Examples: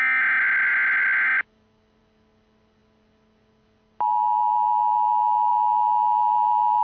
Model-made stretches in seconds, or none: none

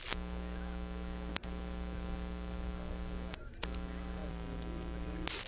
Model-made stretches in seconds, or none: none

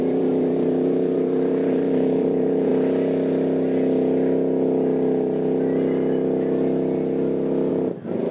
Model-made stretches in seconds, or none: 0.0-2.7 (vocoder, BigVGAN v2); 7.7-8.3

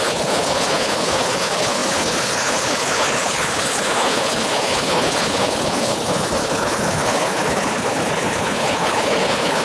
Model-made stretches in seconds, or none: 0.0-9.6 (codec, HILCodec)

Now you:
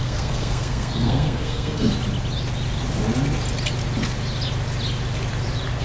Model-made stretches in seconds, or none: 0.0-1.9 (codec, SNAC)

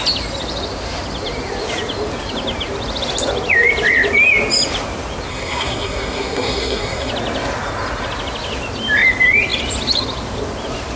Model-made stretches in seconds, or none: 5.3-7.1 (codec, SNAC)

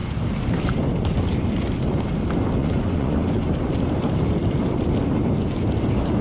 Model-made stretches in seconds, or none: 2.6-3.5 (vocoder, Vocos)

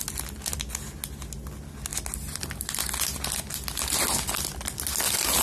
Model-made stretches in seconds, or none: none